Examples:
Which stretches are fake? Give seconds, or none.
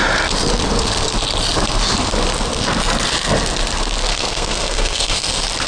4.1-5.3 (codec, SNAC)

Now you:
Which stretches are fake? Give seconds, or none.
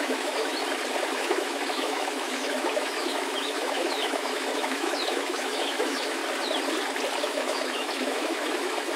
0.0-0.5 (autoencoder, DAC-VAE); 1.1-6.2; 7.2-9.0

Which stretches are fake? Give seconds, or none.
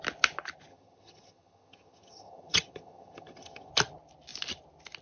0.7-3.7 (vocoder, HiFi-GAN)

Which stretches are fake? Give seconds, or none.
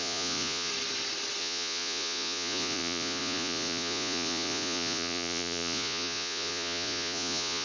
0.0-0.7 (vocoder, Vocos); 1.4-7.6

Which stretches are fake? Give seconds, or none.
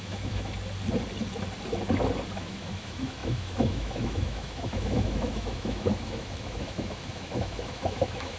0.0-0.5 (autoencoder, DAC-VAE); 2.4-8.4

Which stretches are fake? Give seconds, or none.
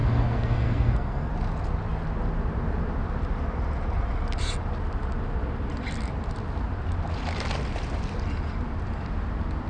0.0-1.3 (codec, SNAC)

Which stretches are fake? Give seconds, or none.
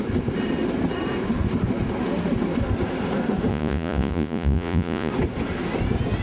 3.5-5.1 (vocoder, Vocos)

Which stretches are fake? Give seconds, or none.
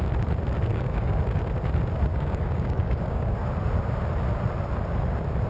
0.7-1.2 (codec, DAC); 2.1-3.4